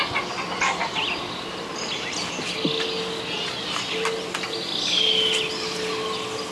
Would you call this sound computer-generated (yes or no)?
no